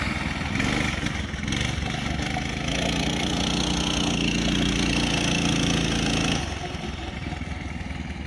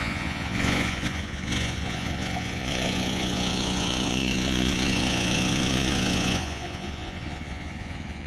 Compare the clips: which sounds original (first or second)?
first